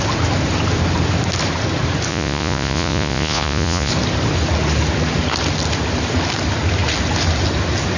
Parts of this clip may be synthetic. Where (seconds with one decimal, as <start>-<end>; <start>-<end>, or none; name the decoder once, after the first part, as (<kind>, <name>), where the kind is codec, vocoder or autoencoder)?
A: 2.1-3.9 (vocoder, Vocos)